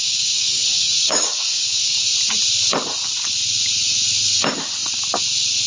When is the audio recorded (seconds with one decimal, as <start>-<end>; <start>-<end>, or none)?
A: 2.1-5.7